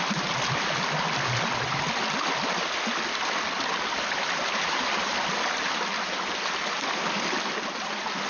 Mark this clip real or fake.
real